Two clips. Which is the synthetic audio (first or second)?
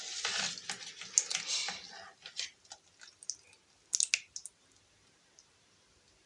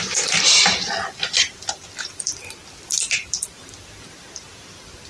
second